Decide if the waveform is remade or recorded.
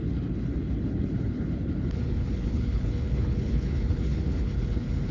remade